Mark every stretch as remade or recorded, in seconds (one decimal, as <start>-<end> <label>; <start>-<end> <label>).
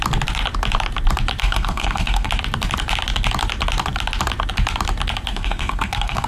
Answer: 0.0-1.4 recorded; 1.4-2.3 remade; 2.3-5.3 recorded; 5.3-6.3 remade